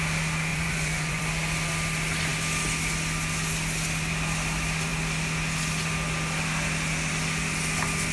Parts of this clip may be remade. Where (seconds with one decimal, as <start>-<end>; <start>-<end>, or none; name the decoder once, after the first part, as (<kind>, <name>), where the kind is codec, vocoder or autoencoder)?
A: 0.5-1.2 (vocoder, Vocos)